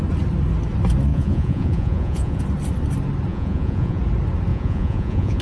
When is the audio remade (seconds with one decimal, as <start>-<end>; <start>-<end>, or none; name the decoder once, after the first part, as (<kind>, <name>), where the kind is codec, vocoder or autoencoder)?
1.1-2.4 (vocoder, Vocos); 3.3-4.0; 4.5-5.4